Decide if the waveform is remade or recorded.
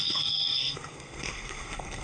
remade